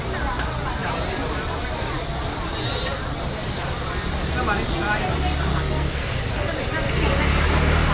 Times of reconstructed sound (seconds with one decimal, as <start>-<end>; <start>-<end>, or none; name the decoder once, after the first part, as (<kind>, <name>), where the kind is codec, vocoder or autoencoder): 5.5-6.2 (codec, SNAC)